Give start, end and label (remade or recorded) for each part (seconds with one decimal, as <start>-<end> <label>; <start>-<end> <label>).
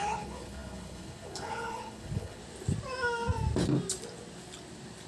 0.0-2.4 remade; 2.4-5.1 recorded